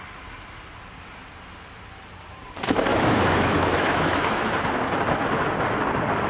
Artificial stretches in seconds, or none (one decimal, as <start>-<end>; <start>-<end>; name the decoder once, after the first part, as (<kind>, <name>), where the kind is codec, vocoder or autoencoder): 2.9-4.4 (autoencoder, DAC-VAE)